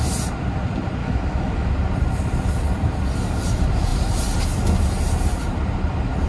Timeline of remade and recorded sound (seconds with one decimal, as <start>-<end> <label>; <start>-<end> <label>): 0.0-1.0 recorded; 1.0-1.7 remade; 1.7-6.3 recorded